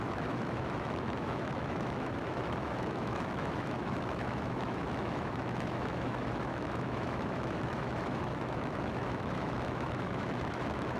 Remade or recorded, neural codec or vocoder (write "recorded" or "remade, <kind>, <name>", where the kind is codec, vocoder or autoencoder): remade, autoencoder, DAC-VAE